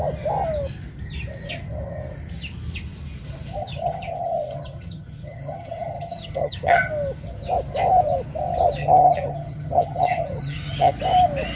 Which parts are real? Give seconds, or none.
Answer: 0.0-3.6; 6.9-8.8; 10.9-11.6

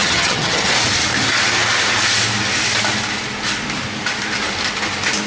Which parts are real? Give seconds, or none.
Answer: 0.7-5.3

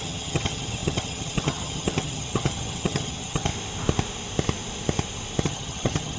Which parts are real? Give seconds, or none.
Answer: 3.5-5.4

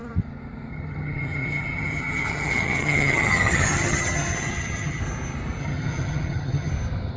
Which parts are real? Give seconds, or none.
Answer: 0.0-0.7; 5.0-5.6; 6.7-7.2

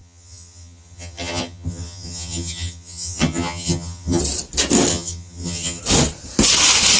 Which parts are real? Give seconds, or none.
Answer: 4.2-4.9; 5.8-7.0

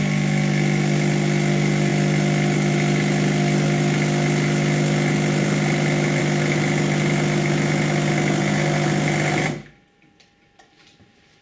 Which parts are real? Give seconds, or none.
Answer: 0.0-11.4